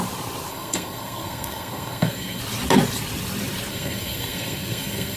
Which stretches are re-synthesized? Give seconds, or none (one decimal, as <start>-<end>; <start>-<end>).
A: 0.5-2.4; 3.7-5.2